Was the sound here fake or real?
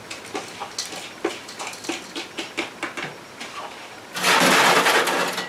real